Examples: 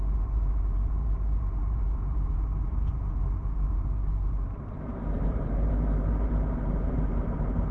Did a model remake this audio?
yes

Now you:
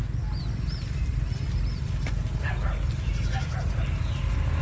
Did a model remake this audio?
no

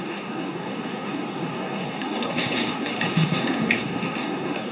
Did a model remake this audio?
yes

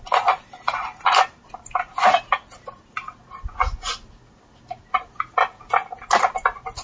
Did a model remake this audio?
no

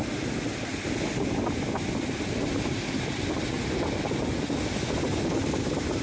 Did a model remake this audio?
no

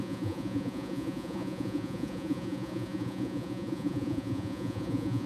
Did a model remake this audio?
yes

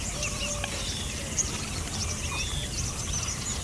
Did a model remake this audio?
no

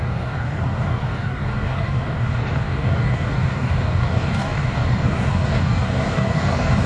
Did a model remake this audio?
yes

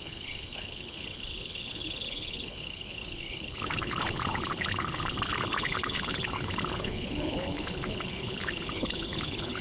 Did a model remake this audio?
yes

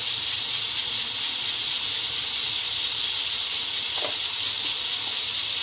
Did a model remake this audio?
no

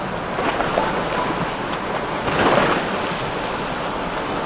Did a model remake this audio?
no